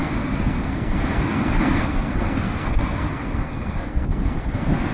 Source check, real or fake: fake